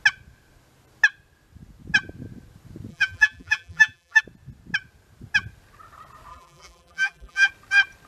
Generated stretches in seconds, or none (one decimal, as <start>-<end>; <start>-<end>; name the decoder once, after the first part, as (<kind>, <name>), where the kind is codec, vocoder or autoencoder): 2.9-4.2 (vocoder, BigVGAN v2); 6.3-7.5